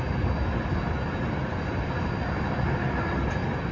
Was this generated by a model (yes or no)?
no